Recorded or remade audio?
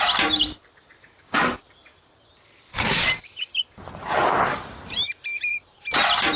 remade